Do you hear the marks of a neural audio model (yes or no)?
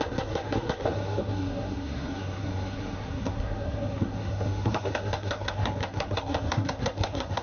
yes